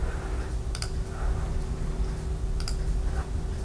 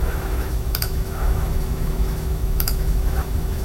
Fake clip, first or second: second